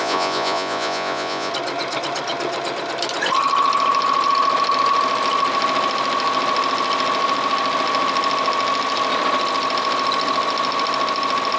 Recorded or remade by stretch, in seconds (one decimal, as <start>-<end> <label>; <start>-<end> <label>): 0.0-1.5 remade; 1.5-11.6 recorded